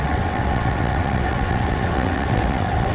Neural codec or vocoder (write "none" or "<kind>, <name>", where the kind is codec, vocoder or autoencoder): vocoder, WaveNeXt